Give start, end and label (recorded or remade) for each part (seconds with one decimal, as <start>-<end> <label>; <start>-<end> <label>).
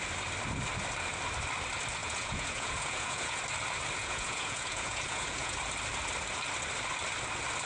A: 0.0-2.0 recorded; 2.0-3.4 remade; 3.4-4.0 recorded; 4.0-5.6 remade; 5.6-7.7 recorded